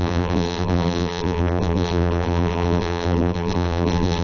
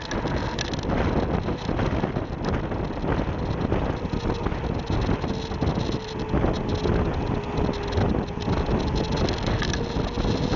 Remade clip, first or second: first